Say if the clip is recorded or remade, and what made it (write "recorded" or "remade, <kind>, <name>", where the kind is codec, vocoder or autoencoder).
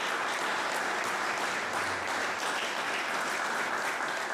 recorded